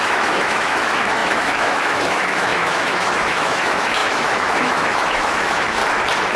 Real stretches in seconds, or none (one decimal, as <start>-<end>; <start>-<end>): 5.8-6.4